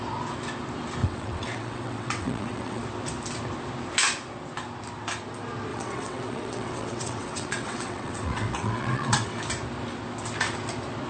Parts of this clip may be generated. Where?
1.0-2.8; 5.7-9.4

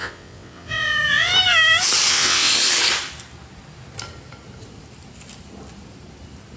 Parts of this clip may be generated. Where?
0.0-1.3; 2.1-2.5

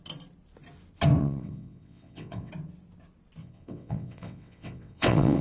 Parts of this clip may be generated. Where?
1.2-2.5; 3.4-5.4